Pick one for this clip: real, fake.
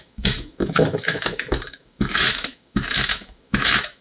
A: fake